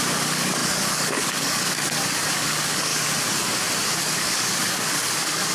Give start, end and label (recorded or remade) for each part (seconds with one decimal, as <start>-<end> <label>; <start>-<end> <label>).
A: 0.0-2.9 remade; 2.9-4.0 recorded; 4.0-5.5 remade